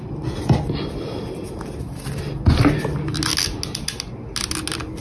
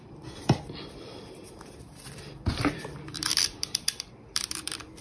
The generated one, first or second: second